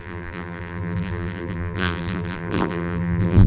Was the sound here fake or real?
fake